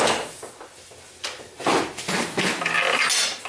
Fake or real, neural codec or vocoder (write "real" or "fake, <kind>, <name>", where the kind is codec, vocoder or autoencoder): real